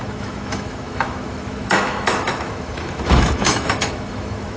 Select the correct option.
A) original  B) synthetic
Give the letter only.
B